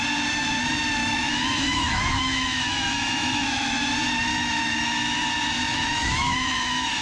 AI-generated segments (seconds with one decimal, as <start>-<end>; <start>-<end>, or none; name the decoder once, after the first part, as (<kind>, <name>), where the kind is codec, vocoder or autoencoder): 1.0-3.9 (autoencoder, DAC-VAE); 4.3-5.2; 5.7-7.0